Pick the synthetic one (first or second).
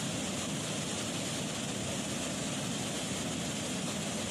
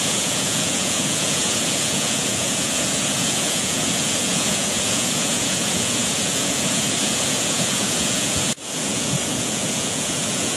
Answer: second